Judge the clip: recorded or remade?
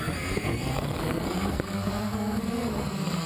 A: remade